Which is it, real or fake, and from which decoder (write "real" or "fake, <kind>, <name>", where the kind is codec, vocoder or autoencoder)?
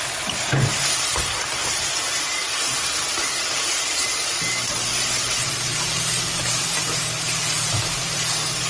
fake, vocoder, BigVGAN v2